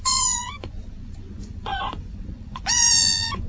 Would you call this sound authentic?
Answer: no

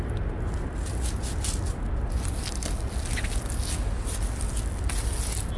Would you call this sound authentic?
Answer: yes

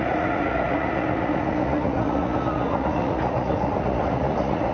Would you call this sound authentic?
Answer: no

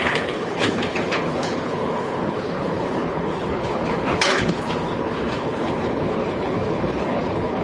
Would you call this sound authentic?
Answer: no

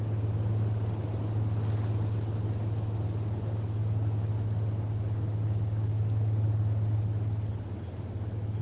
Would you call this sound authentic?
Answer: yes